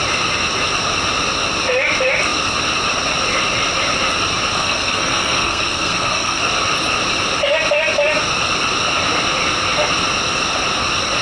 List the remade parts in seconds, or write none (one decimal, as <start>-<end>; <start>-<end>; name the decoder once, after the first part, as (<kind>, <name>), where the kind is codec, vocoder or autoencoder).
4.6-6.4 (codec, SNAC)